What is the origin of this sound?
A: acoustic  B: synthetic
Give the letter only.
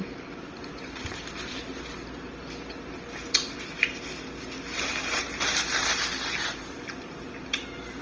A